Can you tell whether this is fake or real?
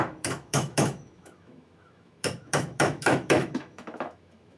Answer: fake